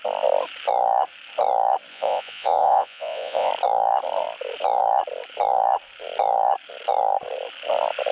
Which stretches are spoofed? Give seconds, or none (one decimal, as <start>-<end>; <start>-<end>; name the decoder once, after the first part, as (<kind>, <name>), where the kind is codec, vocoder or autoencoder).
1.9-3.5 (vocoder, Vocos)